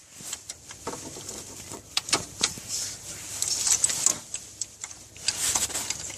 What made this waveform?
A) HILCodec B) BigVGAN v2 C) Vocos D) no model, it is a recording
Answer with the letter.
B